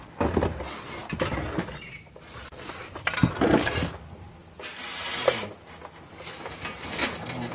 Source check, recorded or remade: recorded